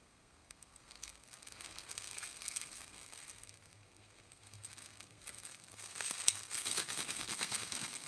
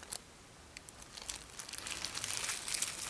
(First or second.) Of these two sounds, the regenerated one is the first